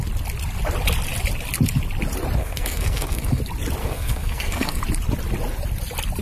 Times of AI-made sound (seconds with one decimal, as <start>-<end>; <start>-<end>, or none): 2.4-3.4; 3.8-4.8